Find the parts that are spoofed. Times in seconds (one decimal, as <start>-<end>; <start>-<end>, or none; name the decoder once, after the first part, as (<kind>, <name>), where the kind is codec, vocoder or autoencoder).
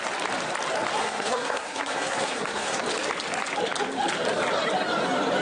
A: 1.0-2.8 (codec, SNAC)